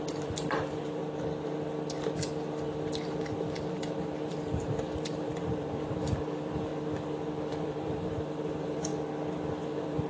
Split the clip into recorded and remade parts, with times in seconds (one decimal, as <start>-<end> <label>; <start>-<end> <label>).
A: 0.0-1.0 remade; 1.0-3.7 recorded; 3.7-6.7 remade; 6.7-7.6 recorded; 7.6-8.9 remade; 8.9-9.5 recorded; 9.5-10.1 remade